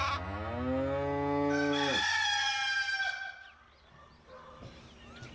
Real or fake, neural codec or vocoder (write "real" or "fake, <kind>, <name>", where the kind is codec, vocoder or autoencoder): real